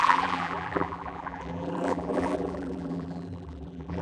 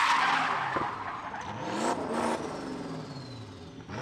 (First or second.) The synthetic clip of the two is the first